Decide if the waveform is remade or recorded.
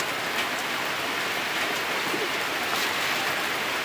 recorded